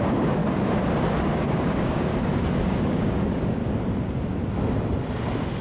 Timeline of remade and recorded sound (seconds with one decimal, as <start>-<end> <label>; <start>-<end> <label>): 0.0-0.4 remade; 0.4-1.3 recorded; 1.3-2.1 remade; 2.1-2.6 recorded; 2.6-3.6 remade; 3.6-5.6 recorded

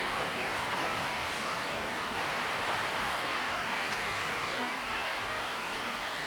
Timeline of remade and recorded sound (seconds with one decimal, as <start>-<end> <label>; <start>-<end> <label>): 0.0-2.2 remade; 2.2-3.0 recorded; 3.0-6.3 remade

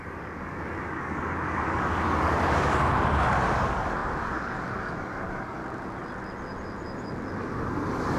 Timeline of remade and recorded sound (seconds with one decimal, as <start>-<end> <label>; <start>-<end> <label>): 0.0-5.6 remade; 5.6-7.4 recorded; 7.4-8.2 remade

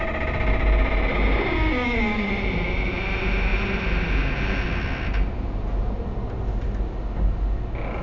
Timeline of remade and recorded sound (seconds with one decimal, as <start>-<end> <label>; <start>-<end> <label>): 0.0-1.1 recorded; 1.1-2.3 remade; 2.3-8.0 recorded

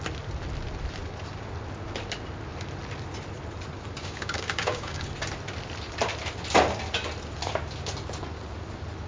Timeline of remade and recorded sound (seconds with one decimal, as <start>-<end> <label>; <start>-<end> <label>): 0.0-4.0 recorded; 4.0-5.1 remade; 5.1-9.1 recorded

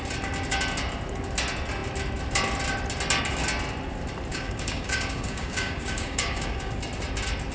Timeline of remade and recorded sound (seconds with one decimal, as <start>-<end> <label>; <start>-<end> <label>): 0.0-4.3 recorded; 4.3-6.8 remade; 6.8-7.5 recorded

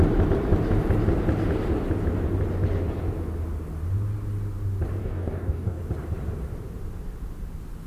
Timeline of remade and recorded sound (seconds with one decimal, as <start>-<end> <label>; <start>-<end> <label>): 0.0-5.0 recorded; 5.0-5.8 remade; 5.8-7.9 recorded

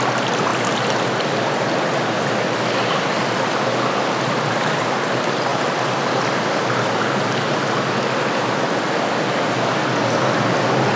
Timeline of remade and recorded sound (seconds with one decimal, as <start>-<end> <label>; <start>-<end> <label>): 0.0-11.0 recorded